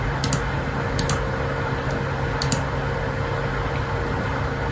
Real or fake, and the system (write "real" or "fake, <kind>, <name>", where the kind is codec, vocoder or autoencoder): real